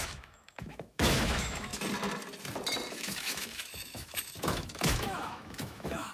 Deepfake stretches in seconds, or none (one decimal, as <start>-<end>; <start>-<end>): 0.0-1.7; 2.9-6.1